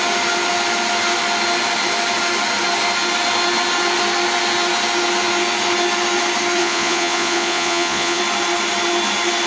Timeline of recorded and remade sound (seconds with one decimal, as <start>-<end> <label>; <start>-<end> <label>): 0.0-6.6 recorded; 6.6-8.2 remade; 8.2-9.5 recorded